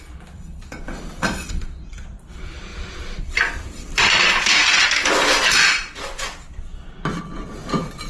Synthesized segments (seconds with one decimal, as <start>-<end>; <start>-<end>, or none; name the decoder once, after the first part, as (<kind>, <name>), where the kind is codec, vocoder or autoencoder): 0.0-8.1 (vocoder, BigVGAN v2)